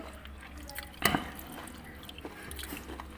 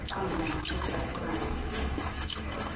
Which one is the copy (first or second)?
second